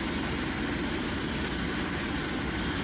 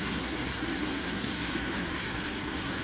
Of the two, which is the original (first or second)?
first